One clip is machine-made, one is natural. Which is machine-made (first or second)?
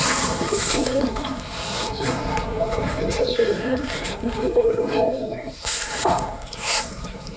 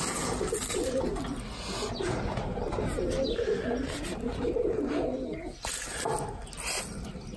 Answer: first